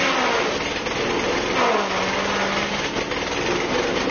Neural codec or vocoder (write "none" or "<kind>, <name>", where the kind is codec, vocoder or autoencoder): none